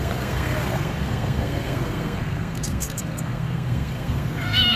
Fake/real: fake